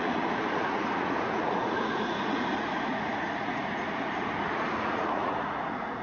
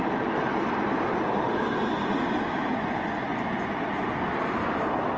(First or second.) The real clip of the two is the second